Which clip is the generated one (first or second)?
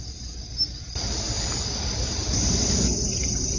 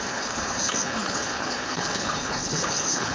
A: second